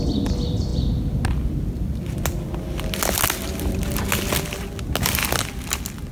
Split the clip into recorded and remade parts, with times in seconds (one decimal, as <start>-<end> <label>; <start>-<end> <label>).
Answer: 0.0-6.1 recorded